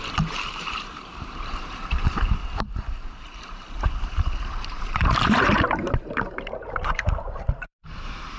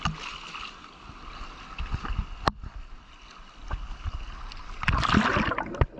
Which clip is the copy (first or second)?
first